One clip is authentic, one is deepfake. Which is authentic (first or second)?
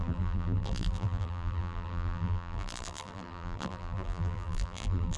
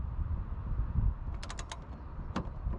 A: second